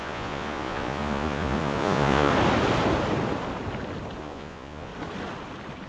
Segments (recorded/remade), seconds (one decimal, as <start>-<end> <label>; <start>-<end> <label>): 0.0-2.3 remade; 2.3-4.2 recorded; 4.2-4.9 remade; 4.9-5.9 recorded